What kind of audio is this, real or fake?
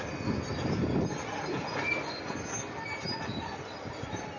real